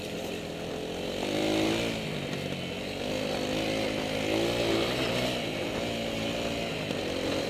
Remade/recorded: recorded